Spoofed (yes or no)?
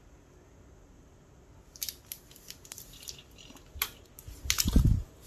no